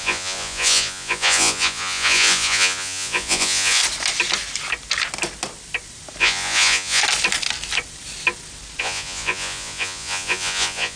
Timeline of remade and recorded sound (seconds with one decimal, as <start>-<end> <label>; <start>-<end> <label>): 0.0-3.8 remade; 3.8-6.2 recorded; 6.2-7.0 remade; 7.0-8.8 recorded; 8.8-11.0 remade